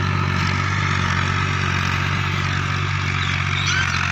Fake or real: real